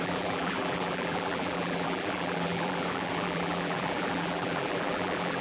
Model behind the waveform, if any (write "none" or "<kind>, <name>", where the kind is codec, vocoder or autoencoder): vocoder, BigVGAN v2